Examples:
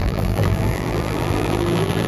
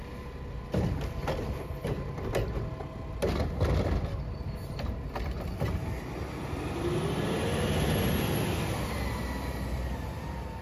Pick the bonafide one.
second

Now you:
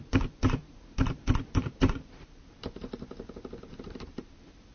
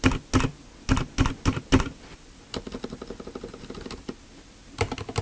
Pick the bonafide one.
second